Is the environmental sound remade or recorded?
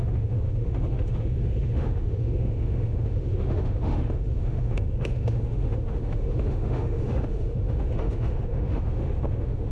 remade